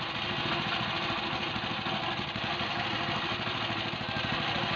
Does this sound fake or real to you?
real